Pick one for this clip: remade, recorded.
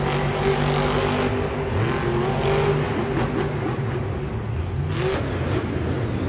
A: recorded